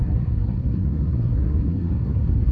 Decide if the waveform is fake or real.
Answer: fake